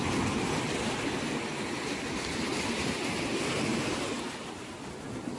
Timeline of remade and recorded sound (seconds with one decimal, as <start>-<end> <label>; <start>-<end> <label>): 0.0-5.4 recorded